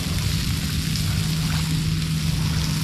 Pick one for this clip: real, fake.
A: real